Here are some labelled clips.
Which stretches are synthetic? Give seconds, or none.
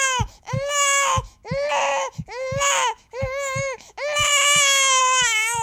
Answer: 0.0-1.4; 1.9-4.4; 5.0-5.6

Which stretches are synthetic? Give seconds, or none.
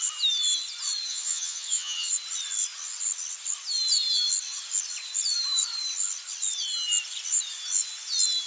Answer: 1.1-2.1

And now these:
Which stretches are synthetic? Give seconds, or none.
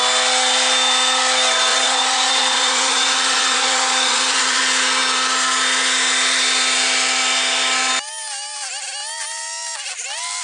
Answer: 1.7-4.6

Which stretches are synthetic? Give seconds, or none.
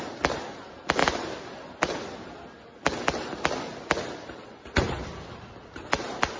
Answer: none